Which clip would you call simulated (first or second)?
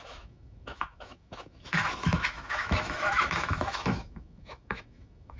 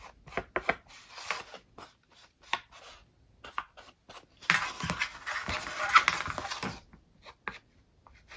first